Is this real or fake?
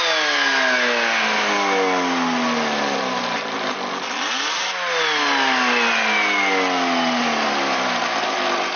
real